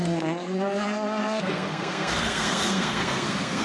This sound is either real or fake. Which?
fake